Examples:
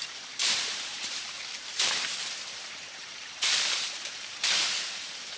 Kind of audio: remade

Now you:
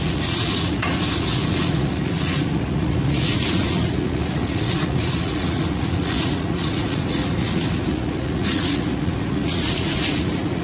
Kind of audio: remade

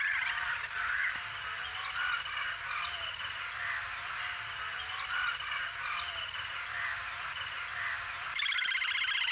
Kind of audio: recorded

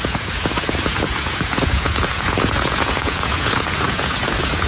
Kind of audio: remade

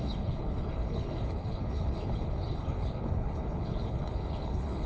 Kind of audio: remade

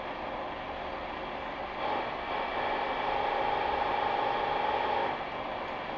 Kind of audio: recorded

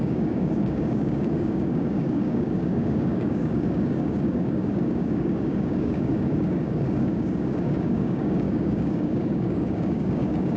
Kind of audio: remade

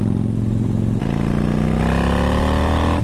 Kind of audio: recorded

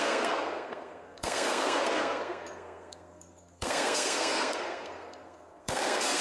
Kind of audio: remade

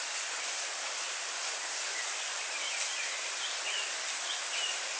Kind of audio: recorded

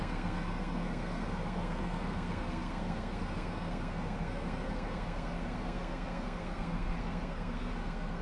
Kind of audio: remade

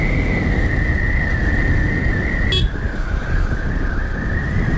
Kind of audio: recorded